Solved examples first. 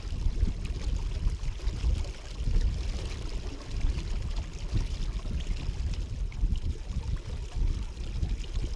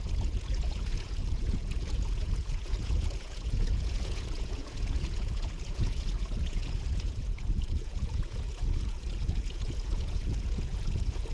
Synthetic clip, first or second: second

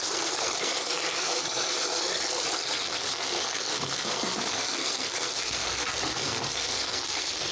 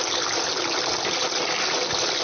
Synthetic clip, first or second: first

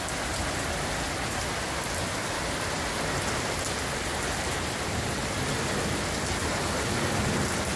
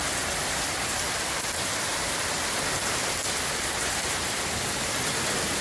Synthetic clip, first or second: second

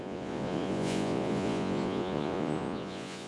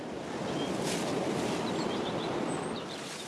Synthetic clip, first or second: first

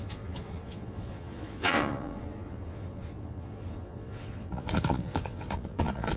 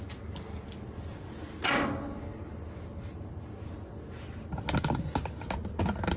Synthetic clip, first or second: first